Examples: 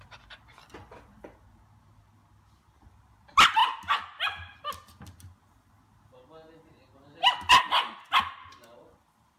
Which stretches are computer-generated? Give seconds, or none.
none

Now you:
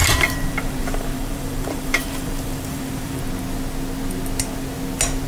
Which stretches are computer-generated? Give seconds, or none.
0.0-3.2 (vocoder, BigVGAN v2)

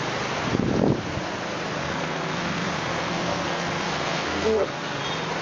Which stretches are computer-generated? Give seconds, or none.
1.8-5.0 (codec, SNAC)

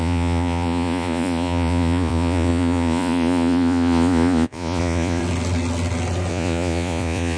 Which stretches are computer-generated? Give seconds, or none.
0.0-5.2 (vocoder, Vocos); 6.3-7.4